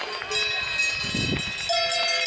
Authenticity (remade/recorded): recorded